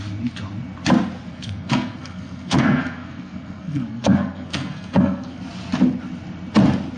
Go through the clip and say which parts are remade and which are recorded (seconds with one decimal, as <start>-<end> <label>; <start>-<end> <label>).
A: 0.0-1.3 recorded; 1.3-5.4 remade; 5.4-7.0 recorded